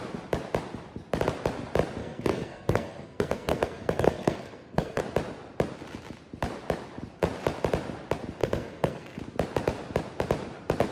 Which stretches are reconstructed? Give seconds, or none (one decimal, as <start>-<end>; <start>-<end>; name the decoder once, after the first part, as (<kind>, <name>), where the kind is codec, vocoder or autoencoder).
2.0-5.0 (codec, SNAC); 8.4-9.2